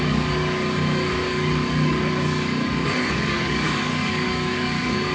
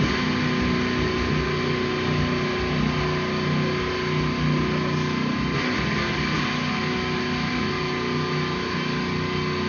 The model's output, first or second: first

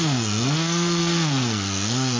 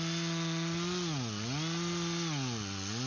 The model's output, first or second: first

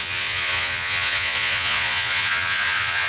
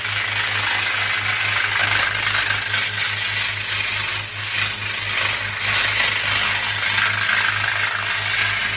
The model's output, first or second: first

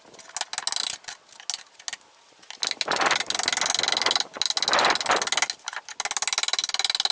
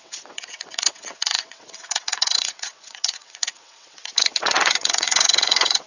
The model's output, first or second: second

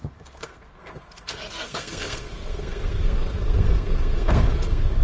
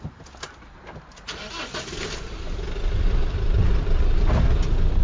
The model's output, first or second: first